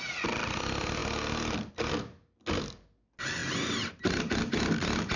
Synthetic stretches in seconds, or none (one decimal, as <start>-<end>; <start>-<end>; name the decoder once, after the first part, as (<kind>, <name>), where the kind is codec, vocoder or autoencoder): none